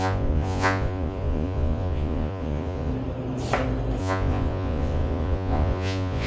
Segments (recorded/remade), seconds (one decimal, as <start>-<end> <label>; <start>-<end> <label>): 0.0-2.9 remade; 2.9-4.0 recorded; 4.0-6.3 remade

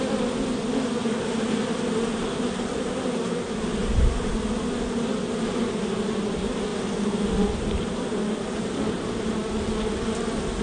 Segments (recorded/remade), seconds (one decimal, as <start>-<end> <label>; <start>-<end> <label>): 0.0-3.8 recorded; 3.8-4.3 remade; 4.3-6.7 recorded; 6.7-8.2 remade; 8.2-10.6 recorded

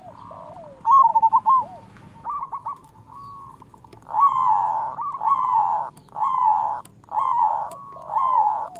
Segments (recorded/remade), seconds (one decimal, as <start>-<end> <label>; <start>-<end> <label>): 0.0-1.1 recorded; 1.1-4.4 remade; 4.4-5.8 recorded; 5.8-6.9 remade; 6.9-7.5 recorded; 7.5-8.8 remade

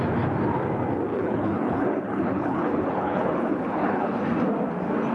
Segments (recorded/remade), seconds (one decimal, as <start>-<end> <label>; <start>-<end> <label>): 0.0-1.1 recorded; 1.1-4.2 remade; 4.2-5.1 recorded

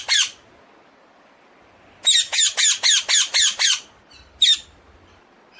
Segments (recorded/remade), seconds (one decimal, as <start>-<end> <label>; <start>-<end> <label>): 0.0-5.6 recorded

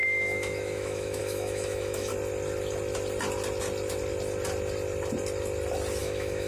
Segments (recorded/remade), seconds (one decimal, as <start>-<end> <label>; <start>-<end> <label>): 0.0-2.1 remade; 2.1-6.0 recorded; 6.0-6.5 remade

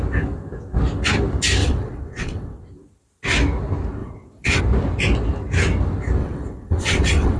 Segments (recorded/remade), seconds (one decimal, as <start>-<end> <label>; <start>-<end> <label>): 0.0-1.6 recorded; 1.6-2.6 remade; 2.6-4.0 recorded; 4.0-4.6 remade; 4.6-6.2 recorded; 6.2-7.4 remade